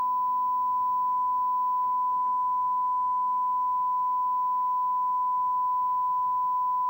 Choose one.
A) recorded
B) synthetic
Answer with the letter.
A